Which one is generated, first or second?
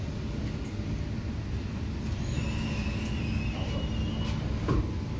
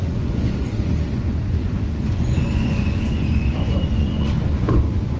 second